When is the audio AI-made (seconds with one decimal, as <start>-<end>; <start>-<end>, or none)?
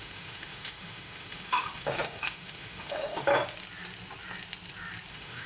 0.0-3.3; 5.1-5.5